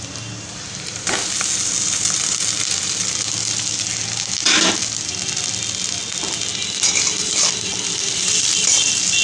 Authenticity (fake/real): real